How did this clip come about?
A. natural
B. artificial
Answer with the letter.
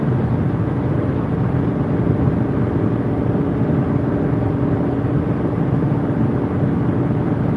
A